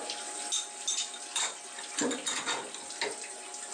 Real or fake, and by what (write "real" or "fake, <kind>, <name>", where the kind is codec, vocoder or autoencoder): real